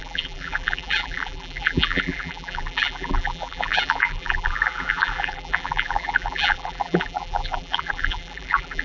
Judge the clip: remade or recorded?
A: remade